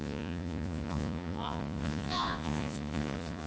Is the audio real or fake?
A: fake